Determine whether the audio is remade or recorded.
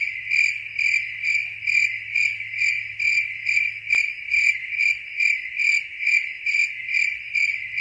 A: recorded